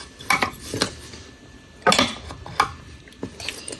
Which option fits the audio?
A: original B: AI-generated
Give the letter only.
A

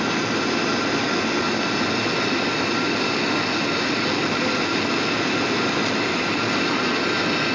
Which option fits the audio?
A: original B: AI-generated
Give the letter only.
A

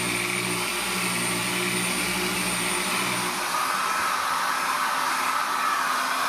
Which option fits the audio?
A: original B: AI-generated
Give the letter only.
A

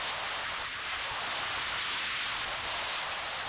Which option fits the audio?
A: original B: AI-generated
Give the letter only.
A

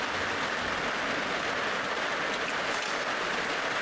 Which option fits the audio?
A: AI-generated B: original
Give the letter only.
B